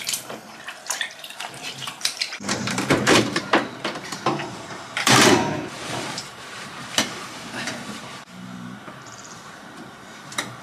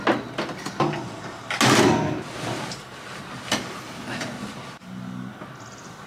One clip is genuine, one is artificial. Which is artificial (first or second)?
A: first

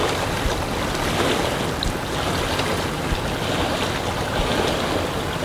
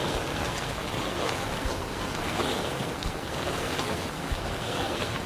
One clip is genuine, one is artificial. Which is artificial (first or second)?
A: second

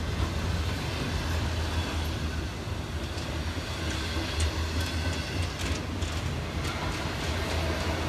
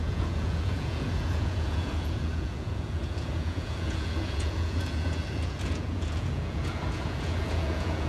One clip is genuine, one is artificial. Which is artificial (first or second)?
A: second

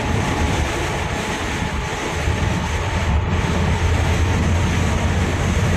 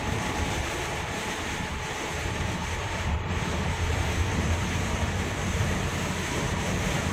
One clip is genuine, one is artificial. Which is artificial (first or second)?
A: second